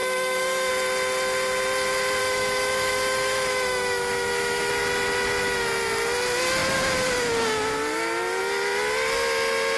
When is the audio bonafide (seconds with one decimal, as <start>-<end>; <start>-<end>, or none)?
0.7-2.2; 4.7-9.8